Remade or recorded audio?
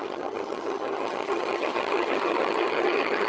remade